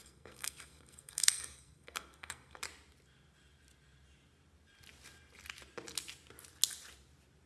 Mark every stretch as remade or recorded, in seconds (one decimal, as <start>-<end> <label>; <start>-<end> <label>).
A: 0.0-2.6 remade; 2.6-7.5 recorded